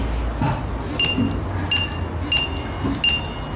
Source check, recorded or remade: recorded